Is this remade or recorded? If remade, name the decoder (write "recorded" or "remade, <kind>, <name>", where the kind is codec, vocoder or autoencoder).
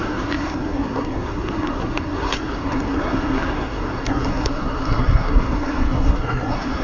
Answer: remade, codec, SNAC